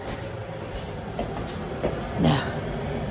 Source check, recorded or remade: recorded